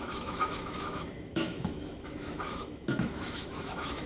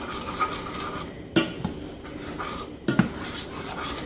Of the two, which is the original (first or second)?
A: second